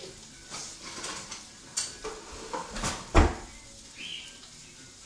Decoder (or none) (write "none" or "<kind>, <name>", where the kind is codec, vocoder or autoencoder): none